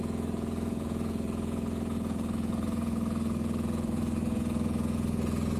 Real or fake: fake